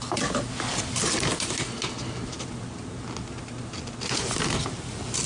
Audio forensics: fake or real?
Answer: real